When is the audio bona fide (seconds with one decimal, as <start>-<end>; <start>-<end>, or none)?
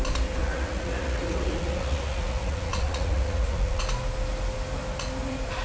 0.0-0.4; 3.8-5.6